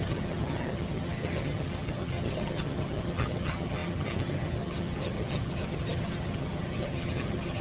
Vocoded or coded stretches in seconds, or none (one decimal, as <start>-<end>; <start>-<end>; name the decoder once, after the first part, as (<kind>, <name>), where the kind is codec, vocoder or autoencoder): 0.0-7.6 (vocoder, HiFi-GAN)